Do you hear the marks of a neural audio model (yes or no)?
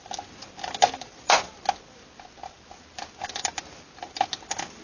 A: no